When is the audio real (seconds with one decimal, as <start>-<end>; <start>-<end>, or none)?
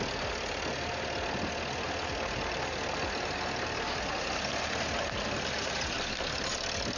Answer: 0.0-7.0